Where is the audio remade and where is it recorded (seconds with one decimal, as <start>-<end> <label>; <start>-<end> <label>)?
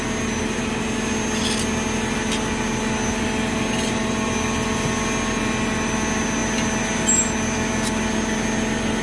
0.0-9.0 recorded